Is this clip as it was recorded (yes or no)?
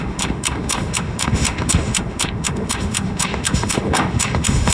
no